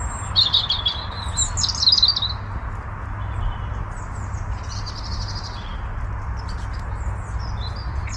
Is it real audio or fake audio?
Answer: real